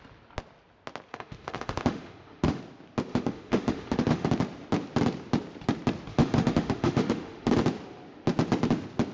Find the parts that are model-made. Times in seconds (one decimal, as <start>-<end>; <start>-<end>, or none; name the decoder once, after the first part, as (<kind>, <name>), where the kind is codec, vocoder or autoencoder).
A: 1.1-2.6 (autoencoder, DAC-VAE); 3.1-4.3; 6.1-7.5